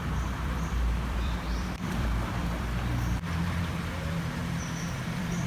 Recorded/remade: remade